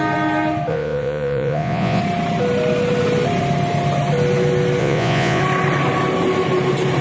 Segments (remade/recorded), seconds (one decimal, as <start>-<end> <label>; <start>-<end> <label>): 0.0-0.7 recorded; 0.7-2.0 remade; 2.0-4.8 recorded; 4.8-5.4 remade; 5.4-7.0 recorded